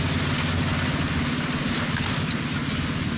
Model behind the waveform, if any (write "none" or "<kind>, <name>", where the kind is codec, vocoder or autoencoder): none